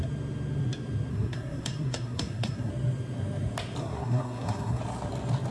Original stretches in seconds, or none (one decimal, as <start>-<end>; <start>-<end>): 0.0-1.1; 2.7-3.8; 4.8-5.5